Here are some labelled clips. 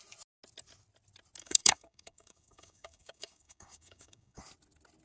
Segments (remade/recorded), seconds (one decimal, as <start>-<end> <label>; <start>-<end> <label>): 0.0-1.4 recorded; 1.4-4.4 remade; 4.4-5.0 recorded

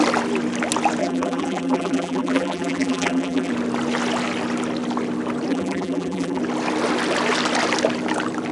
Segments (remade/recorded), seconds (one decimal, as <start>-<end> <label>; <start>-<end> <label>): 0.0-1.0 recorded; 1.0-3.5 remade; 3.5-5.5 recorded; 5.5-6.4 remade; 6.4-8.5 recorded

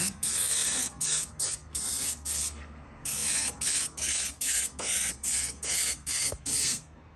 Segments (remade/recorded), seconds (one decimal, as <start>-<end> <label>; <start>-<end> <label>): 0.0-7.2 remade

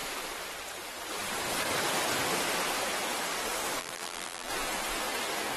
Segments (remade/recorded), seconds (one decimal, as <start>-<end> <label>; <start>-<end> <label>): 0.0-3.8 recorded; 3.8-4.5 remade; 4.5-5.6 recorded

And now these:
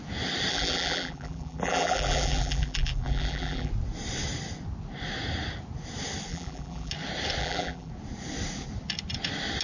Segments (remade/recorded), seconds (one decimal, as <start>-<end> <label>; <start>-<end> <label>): 0.0-0.5 recorded; 0.5-3.7 remade; 3.7-6.3 recorded; 6.3-6.9 remade; 6.9-7.4 recorded; 7.4-7.9 remade; 7.9-9.6 recorded